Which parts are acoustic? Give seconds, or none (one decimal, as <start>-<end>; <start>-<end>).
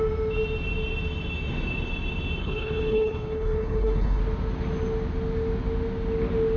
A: 0.0-2.4; 4.2-6.6